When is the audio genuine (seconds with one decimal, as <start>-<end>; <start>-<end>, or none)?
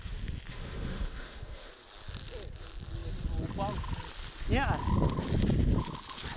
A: 0.0-0.5; 1.7-6.4